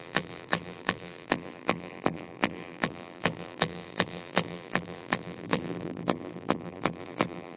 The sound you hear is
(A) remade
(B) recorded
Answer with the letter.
A